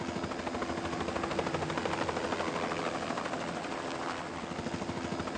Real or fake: real